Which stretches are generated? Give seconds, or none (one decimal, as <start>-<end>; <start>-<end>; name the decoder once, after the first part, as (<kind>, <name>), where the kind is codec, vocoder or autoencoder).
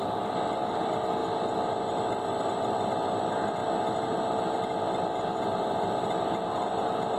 none